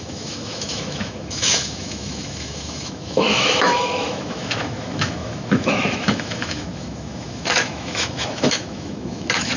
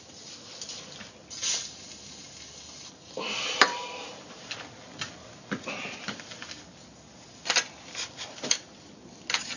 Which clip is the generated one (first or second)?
first